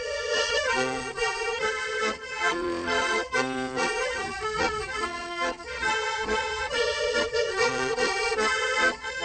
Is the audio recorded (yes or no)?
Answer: no